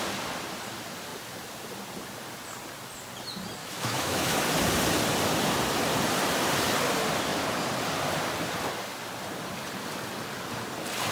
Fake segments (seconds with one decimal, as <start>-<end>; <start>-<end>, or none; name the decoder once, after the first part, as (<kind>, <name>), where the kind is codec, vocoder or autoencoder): 3.6-4.4 (autoencoder, DAC-VAE)